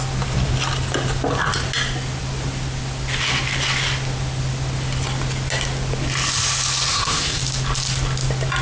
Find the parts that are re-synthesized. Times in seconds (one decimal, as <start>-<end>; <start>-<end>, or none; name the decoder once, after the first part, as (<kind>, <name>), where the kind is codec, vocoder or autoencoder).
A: 6.9-7.4 (codec, SNAC)